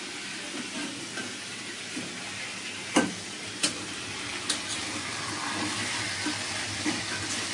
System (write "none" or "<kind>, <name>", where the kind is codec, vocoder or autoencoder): none